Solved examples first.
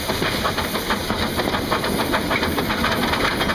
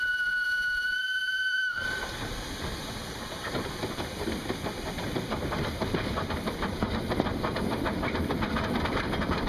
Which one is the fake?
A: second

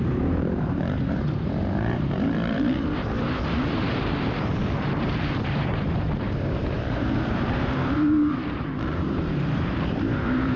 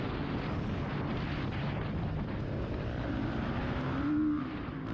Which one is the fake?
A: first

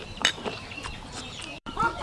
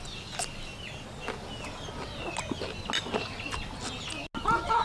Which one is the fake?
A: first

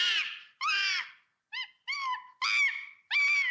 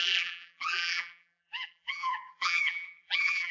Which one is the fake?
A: second